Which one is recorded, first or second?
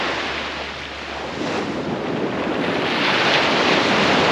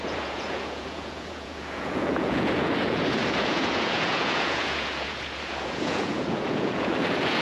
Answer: first